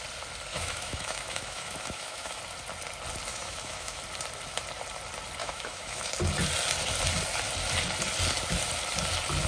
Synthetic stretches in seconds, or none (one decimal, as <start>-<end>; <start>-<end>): 0.5-2.4; 3.3-4.0; 5.4-6.1